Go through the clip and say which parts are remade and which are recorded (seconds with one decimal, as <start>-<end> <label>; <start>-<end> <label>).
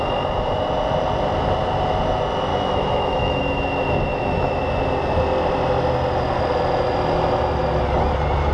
0.0-2.5 recorded; 2.5-3.4 remade; 3.4-4.1 recorded; 4.1-4.6 remade; 4.6-8.5 recorded